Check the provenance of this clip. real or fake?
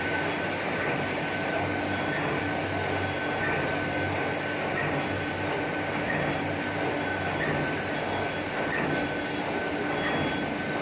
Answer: real